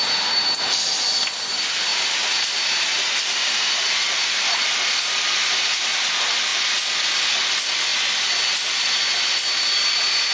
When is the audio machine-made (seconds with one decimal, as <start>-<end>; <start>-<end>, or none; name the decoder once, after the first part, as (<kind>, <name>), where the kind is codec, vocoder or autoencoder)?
none